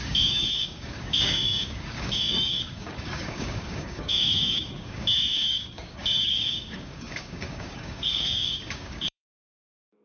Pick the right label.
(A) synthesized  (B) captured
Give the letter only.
A